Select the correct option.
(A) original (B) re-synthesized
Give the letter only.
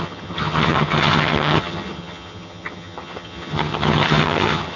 B